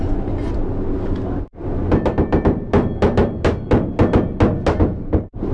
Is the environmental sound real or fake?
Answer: real